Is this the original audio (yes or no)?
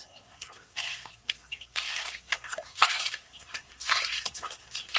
no